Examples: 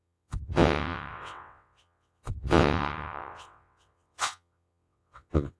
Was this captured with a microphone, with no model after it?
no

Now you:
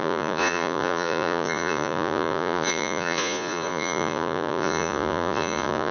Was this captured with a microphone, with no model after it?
no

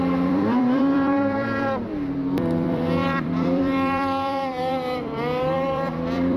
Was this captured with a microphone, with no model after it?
no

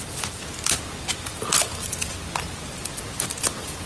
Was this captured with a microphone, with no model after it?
yes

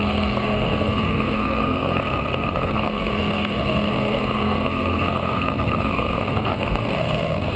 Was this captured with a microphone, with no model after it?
no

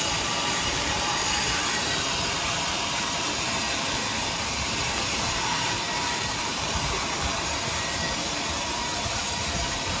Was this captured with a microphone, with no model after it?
no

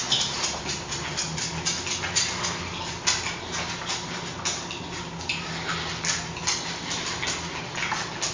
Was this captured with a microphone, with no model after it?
yes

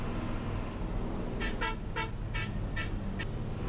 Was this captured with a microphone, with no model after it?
yes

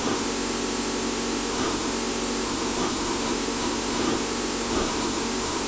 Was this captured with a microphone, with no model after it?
no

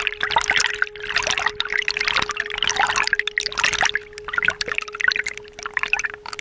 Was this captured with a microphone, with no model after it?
yes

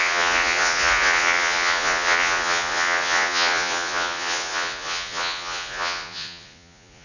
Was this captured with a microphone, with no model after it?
no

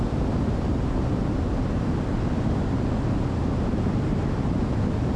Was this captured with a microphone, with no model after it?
yes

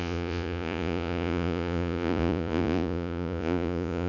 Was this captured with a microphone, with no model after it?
no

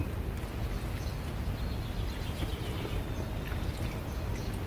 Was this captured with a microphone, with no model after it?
yes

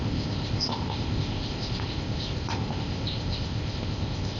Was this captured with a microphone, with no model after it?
no